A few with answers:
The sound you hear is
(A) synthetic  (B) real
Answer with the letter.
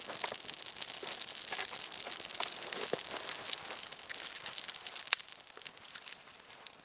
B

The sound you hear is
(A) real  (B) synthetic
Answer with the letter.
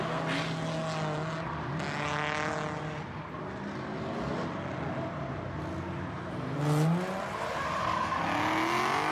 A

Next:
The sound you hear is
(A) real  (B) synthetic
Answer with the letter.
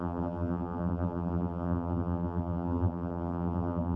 B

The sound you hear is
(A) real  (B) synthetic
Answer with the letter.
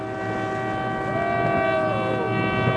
A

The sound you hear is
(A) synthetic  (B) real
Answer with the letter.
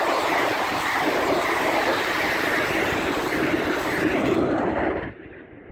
A